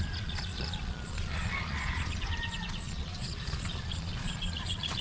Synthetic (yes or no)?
yes